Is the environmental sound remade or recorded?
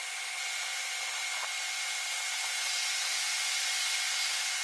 remade